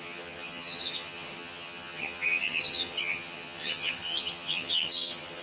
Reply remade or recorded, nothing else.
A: remade